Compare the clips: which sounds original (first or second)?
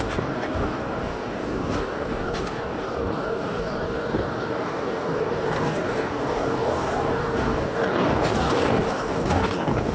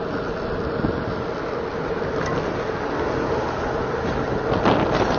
second